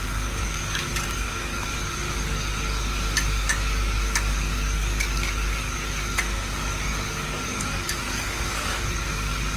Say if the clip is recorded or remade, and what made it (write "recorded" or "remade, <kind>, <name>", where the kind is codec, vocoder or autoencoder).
remade, codec, DAC